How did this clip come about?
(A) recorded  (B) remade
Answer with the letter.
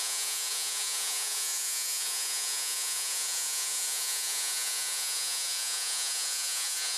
B